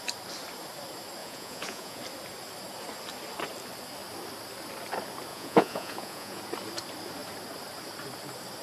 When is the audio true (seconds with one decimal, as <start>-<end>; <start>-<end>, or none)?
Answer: 0.0-1.2; 2.0-5.3; 6.4-8.6